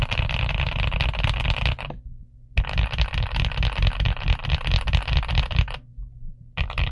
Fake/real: real